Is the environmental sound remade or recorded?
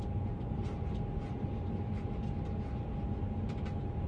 recorded